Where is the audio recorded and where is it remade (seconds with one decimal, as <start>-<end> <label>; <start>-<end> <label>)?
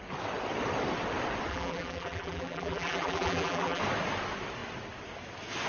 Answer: 0.0-1.5 recorded; 1.5-3.8 remade; 3.8-5.7 recorded